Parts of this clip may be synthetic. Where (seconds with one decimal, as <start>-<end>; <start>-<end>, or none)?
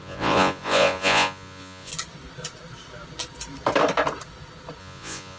0.0-1.9; 4.8-5.4